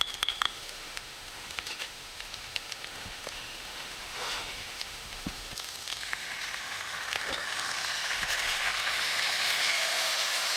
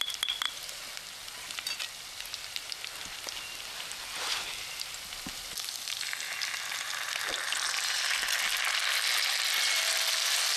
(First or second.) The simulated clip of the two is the first